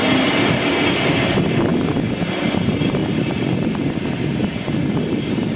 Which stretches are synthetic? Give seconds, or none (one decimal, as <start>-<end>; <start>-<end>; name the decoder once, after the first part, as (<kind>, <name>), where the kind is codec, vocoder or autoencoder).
0.0-0.6 (vocoder, BigVGAN v2); 1.7-2.4